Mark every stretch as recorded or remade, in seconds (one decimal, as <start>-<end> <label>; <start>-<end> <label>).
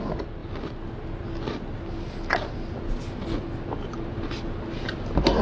0.0-5.4 recorded